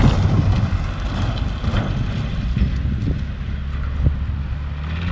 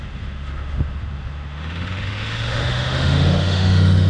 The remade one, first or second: second